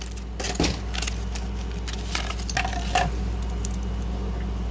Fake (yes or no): no